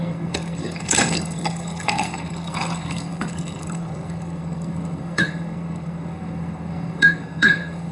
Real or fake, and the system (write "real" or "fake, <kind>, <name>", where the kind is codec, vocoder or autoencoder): fake, codec, SNAC